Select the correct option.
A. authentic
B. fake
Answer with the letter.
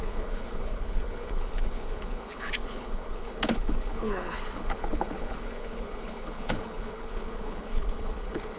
B